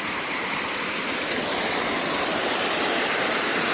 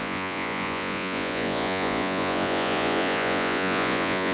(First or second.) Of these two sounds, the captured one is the first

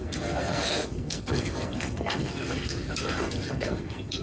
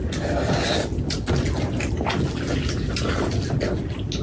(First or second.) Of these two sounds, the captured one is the second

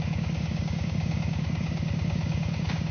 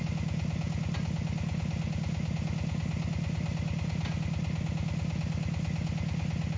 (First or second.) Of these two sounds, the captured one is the second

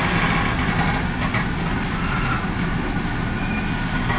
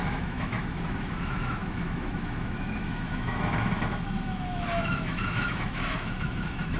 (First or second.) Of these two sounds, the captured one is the first